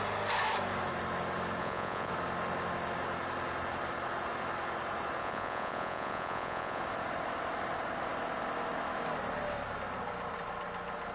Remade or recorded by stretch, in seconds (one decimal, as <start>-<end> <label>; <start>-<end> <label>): 0.0-1.6 recorded; 1.6-2.1 remade; 2.1-5.2 recorded; 5.2-6.8 remade; 6.8-11.1 recorded